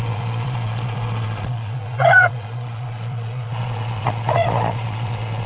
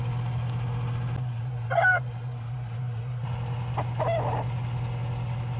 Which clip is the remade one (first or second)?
first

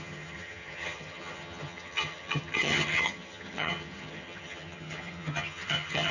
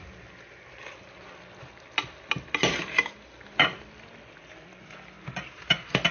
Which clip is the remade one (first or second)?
first